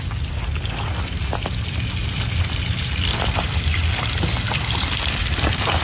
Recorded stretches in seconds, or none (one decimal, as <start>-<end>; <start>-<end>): 0.0-2.1

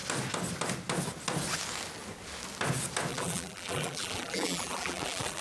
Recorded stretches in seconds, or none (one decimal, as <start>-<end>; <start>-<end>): 0.0-3.1

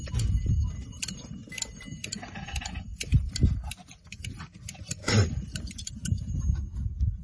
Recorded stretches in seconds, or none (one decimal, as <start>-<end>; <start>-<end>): 0.0-2.9; 3.5-5.0; 5.9-7.2

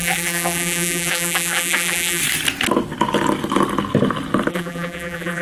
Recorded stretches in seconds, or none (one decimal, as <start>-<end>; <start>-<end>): 2.2-4.5

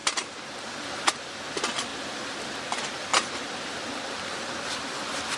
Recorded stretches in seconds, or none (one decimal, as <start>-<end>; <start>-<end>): 0.9-1.9; 2.6-5.4

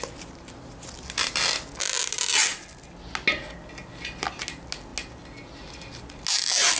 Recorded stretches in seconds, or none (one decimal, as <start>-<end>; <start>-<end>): 0.0-6.8